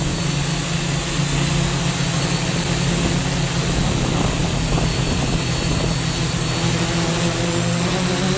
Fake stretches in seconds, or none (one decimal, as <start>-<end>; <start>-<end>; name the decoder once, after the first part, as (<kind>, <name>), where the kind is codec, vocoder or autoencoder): none